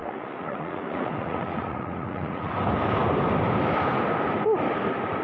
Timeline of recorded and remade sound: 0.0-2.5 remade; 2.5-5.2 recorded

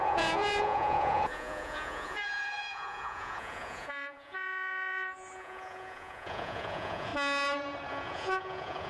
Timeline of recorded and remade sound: 0.0-7.1 remade; 7.1-7.9 recorded; 7.9-8.9 remade

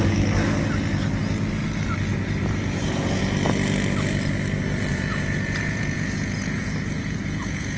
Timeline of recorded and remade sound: 0.0-2.1 recorded; 2.1-3.2 remade; 3.2-4.9 recorded; 4.9-7.8 remade

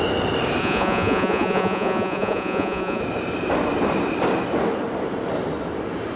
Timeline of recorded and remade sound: 0.0-0.6 recorded; 0.6-3.0 remade; 3.0-6.2 recorded

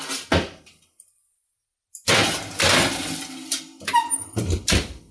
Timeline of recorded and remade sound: 0.0-5.1 recorded

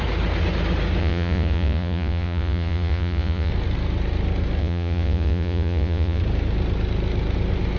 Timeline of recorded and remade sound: 0.0-1.0 recorded; 1.0-3.5 remade; 3.5-4.6 recorded; 4.6-6.2 remade; 6.2-7.8 recorded

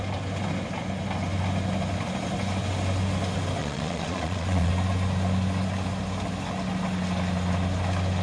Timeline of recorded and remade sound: 0.0-3.6 recorded; 3.6-4.7 remade; 4.7-8.2 recorded

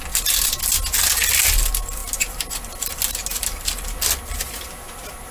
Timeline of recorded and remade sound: 0.0-5.3 recorded